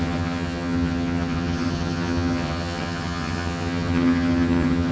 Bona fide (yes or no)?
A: no